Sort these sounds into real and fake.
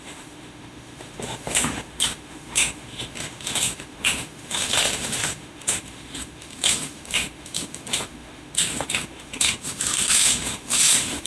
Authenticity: fake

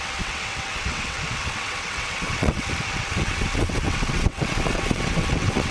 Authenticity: fake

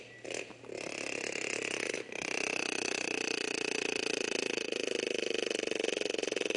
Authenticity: real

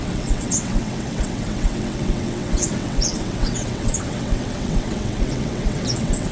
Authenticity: fake